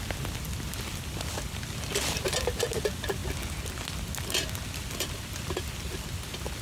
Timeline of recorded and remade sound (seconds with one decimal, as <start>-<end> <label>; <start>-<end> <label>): 0.0-6.6 recorded